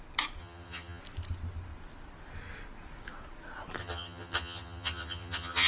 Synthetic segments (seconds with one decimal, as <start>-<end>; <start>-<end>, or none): 0.4-1.0; 3.8-5.7